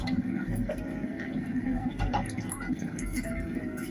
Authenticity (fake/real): fake